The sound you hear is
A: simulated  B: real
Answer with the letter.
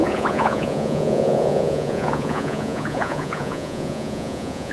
A